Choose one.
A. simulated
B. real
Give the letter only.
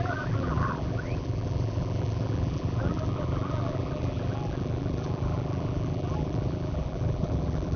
A